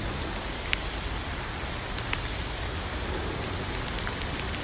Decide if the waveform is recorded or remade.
recorded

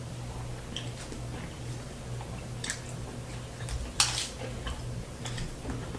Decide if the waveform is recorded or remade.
recorded